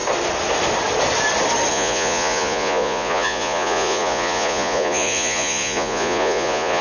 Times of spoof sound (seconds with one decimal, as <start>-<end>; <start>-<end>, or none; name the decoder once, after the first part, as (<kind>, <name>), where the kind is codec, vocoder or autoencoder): 1.7-6.8 (vocoder, Vocos)